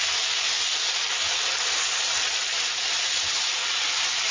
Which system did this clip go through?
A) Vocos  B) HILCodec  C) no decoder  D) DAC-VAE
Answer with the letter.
C